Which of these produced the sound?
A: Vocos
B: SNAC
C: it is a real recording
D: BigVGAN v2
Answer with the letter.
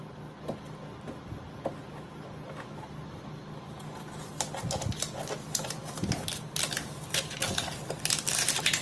C